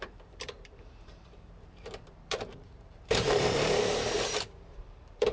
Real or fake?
fake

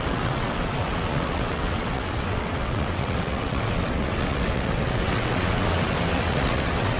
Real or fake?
fake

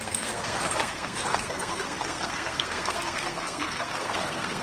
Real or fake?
fake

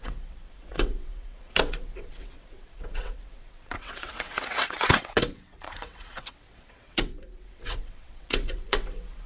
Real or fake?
fake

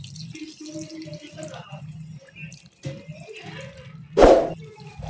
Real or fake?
real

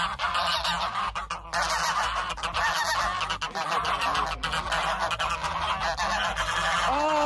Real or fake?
real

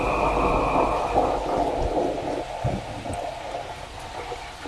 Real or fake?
real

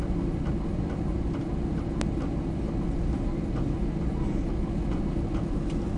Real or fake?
real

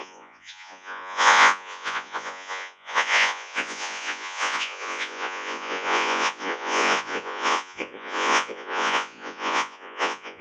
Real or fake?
fake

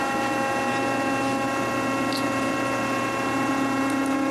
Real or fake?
real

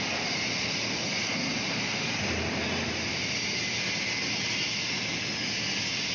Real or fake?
real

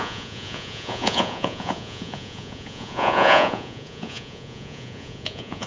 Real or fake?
fake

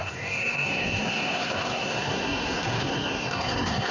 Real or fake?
fake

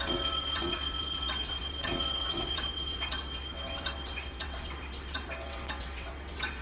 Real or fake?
fake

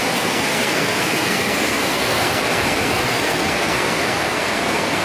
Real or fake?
fake